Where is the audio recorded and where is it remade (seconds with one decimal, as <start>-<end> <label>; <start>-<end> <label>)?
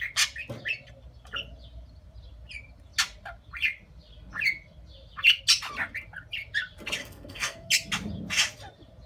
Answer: 0.0-7.0 recorded; 7.0-7.7 remade; 7.7-9.1 recorded